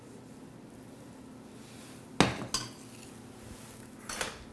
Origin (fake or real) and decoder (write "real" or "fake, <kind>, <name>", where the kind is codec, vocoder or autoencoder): real